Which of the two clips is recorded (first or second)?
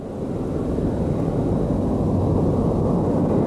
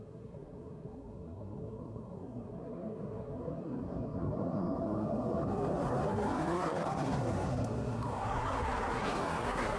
first